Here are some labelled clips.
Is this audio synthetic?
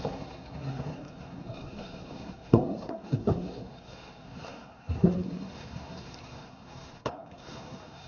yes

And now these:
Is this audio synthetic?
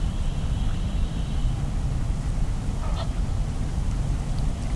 no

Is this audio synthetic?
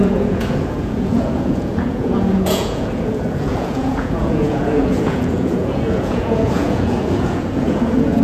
yes